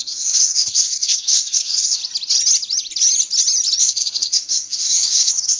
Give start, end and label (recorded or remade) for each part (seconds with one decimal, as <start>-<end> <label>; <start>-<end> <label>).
0.0-2.0 remade; 2.0-3.8 recorded; 3.8-5.6 remade